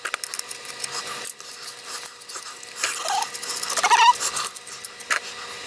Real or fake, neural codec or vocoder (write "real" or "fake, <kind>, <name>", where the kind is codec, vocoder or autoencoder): real